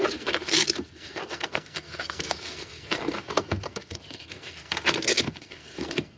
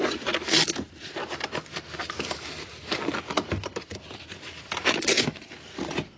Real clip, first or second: second